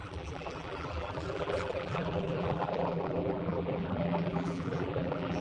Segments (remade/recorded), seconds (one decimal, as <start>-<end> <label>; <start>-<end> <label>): 0.0-5.4 remade